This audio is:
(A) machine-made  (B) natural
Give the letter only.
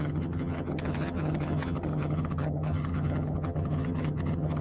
A